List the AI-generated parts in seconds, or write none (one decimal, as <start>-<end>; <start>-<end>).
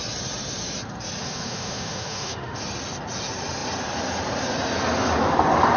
1.2-2.6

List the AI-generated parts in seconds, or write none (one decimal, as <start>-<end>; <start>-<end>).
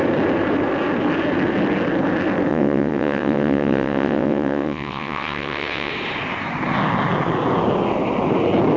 2.5-5.9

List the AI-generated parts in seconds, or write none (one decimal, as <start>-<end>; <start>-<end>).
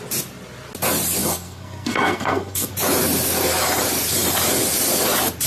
1.2-2.7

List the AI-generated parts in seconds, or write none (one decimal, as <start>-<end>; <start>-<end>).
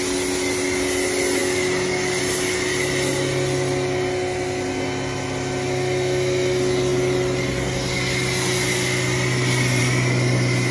none